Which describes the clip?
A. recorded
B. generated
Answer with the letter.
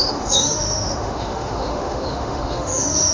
B